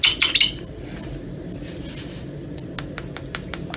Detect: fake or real real